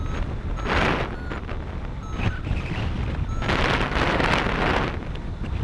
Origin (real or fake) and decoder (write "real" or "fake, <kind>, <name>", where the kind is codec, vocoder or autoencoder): real